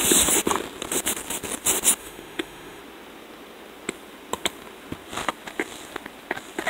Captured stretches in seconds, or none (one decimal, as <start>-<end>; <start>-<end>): 0.0-2.0; 2.8-6.7